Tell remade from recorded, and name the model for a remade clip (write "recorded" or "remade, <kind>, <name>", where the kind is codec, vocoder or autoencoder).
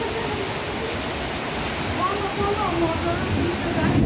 recorded